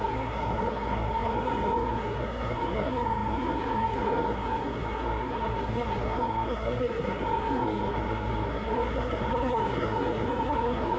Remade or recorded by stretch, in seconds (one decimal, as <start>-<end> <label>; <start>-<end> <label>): 0.0-11.0 remade